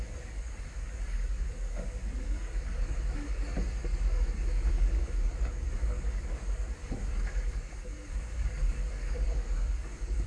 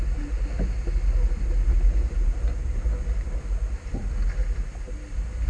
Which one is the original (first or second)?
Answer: second